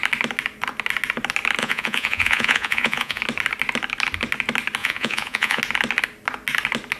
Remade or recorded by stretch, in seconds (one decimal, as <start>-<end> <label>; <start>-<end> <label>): 0.0-1.6 recorded; 1.6-3.2 remade; 3.2-4.8 recorded; 4.8-5.6 remade; 5.6-7.0 recorded